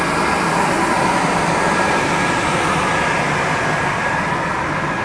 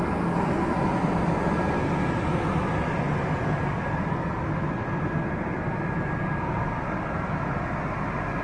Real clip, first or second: second